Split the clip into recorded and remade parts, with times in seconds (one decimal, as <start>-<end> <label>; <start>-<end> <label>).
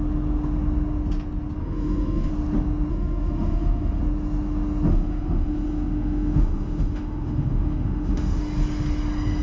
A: 0.0-1.6 recorded; 1.6-2.3 remade; 2.3-2.9 recorded; 2.9-4.0 remade; 4.0-4.9 recorded; 4.9-8.4 remade; 8.4-9.4 recorded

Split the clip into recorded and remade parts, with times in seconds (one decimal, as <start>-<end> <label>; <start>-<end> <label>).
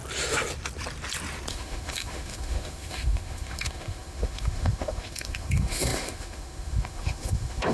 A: 0.0-1.5 recorded; 1.5-7.7 remade